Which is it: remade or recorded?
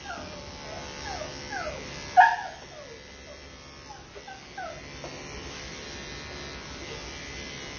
recorded